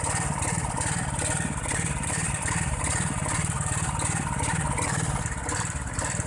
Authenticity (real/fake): fake